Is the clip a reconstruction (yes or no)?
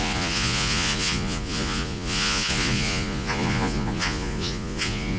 yes